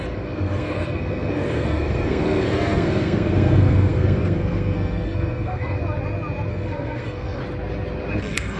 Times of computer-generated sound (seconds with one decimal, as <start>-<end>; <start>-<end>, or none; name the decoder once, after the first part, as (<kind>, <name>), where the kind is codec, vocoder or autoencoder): 0.0-5.8 (codec, SNAC); 6.5-7.4; 8.2-8.6